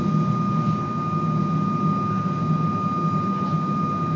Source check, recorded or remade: recorded